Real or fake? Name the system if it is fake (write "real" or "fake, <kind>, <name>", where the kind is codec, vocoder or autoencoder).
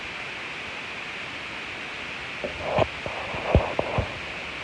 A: real